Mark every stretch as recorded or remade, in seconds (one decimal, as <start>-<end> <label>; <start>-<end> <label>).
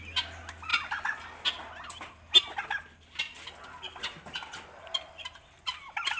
0.0-6.2 recorded